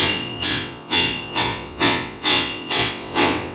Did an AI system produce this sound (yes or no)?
yes